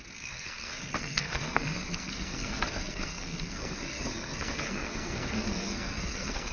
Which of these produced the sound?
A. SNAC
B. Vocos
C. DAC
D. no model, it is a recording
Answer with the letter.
A